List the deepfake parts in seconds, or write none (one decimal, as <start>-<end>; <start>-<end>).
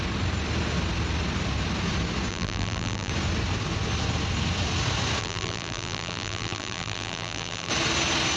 2.3-3.1; 5.2-7.7